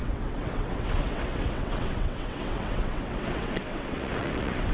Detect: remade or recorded remade